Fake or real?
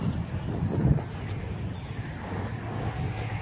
real